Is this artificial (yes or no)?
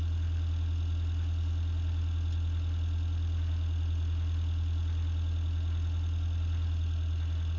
no